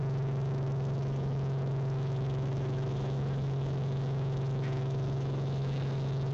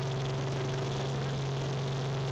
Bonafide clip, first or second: second